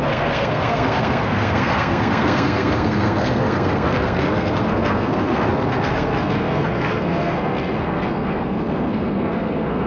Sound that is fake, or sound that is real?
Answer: fake